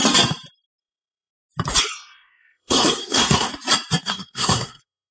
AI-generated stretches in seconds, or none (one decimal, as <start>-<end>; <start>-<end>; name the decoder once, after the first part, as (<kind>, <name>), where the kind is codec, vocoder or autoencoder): 0.8-1.3 (codec, SNAC); 1.8-3.5; 4.0-5.1